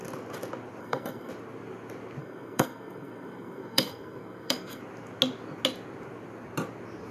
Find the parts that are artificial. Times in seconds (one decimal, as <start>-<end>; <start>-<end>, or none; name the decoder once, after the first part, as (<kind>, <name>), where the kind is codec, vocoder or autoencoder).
0.8-1.3 (codec, SNAC); 2.2-4.8